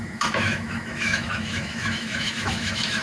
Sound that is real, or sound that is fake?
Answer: fake